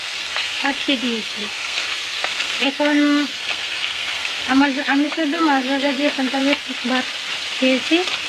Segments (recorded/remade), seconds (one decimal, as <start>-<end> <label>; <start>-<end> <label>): 0.0-6.4 remade; 6.4-8.3 recorded